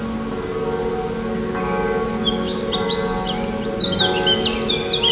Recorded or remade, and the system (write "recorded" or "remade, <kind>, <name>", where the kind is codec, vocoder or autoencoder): recorded